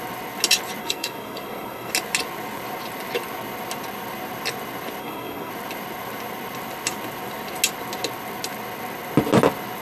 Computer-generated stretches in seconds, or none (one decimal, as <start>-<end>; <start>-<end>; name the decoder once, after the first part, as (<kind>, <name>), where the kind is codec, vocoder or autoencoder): 0.8-1.9 (codec, SNAC); 5.0-5.5